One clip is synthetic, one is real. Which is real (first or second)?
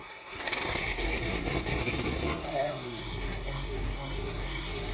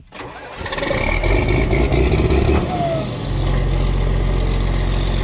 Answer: second